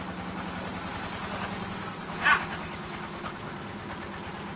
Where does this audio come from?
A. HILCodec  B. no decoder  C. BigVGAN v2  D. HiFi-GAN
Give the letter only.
B